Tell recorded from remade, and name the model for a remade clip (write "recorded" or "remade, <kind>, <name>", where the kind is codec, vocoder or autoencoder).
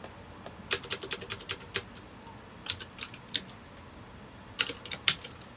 recorded